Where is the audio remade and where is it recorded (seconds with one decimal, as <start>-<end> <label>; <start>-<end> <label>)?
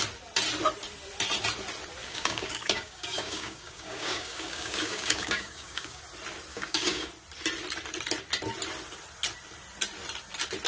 0.0-2.0 recorded; 2.0-6.0 remade; 6.0-6.5 recorded; 6.5-7.1 remade; 7.1-10.7 recorded